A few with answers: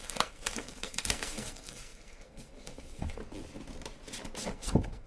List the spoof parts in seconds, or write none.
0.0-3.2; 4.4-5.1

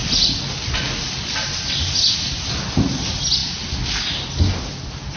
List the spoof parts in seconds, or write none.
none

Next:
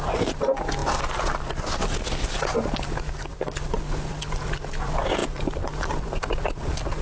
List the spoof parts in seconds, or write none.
none

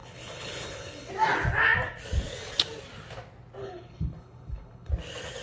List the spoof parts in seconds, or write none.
0.0-1.1; 3.6-4.9

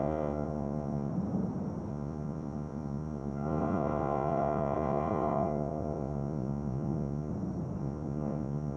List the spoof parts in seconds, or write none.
0.0-1.1; 1.9-7.3; 7.8-8.8

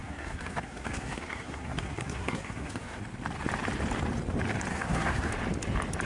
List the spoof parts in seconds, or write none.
0.0-3.0; 4.7-5.3

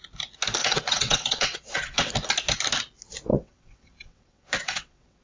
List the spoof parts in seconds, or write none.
0.6-2.1; 3.3-5.2

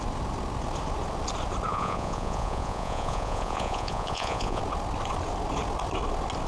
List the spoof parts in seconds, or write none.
1.7-4.6